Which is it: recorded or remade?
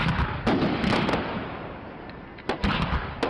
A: recorded